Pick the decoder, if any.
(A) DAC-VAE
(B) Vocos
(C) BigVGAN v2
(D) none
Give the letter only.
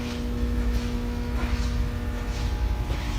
A